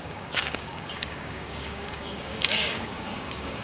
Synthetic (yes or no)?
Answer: yes